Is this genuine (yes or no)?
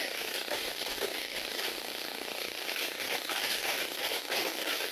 no